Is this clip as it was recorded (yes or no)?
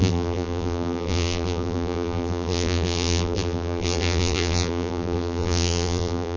no